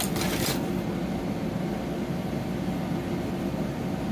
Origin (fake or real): real